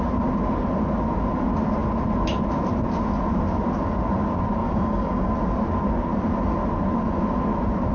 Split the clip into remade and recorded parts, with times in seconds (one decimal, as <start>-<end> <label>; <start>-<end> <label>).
0.0-4.6 recorded; 4.6-5.3 remade; 5.3-7.9 recorded